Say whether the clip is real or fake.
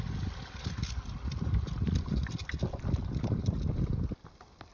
real